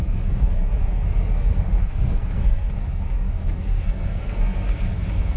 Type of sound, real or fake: fake